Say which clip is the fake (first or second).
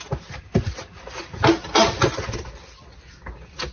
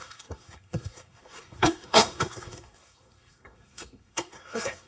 second